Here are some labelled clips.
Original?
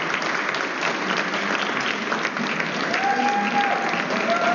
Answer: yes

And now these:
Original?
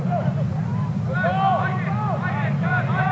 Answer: yes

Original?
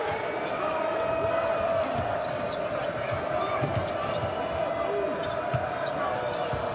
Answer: yes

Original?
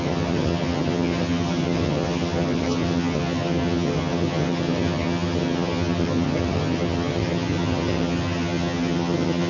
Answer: no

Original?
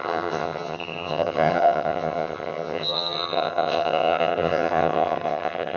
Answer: no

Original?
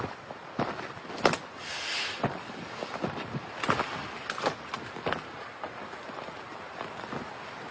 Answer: yes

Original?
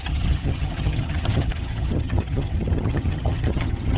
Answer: no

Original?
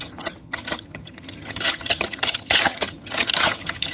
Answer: no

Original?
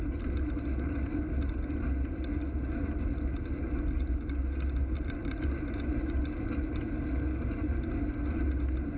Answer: yes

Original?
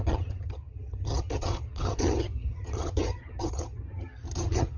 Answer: no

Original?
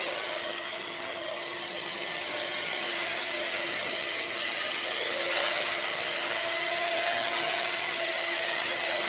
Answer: no